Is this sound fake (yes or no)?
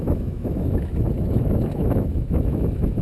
yes